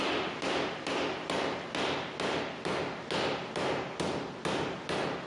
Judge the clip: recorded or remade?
recorded